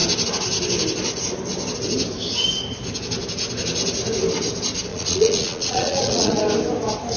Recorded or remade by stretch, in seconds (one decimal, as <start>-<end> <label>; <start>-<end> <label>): 0.0-4.9 recorded; 4.9-6.4 remade; 6.4-7.2 recorded